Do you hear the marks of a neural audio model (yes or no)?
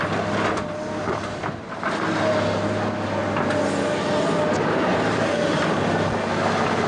no